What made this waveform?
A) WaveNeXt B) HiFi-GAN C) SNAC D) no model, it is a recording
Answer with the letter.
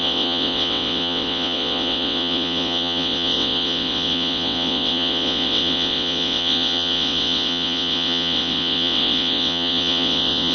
A